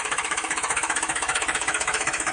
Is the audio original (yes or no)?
no